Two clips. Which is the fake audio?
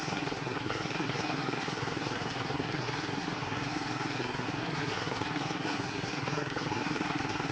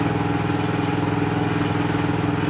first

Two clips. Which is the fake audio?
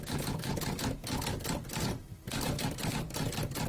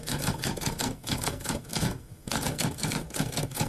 second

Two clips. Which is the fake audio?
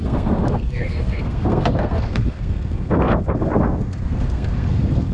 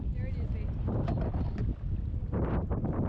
first